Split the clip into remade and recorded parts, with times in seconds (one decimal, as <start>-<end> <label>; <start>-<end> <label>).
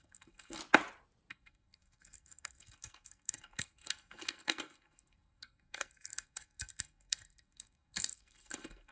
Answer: 0.0-0.6 remade; 0.6-1.3 recorded; 1.3-8.9 remade